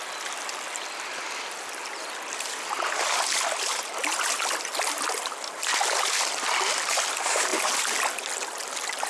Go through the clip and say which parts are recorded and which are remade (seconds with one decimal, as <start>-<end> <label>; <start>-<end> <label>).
0.0-9.1 recorded